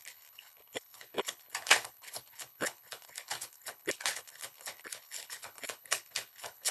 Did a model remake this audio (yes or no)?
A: yes